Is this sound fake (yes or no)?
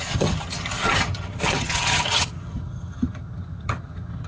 yes